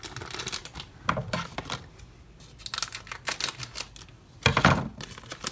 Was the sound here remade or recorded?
recorded